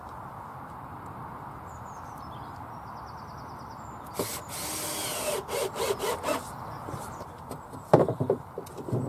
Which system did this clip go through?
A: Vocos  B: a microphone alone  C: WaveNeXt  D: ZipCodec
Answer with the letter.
B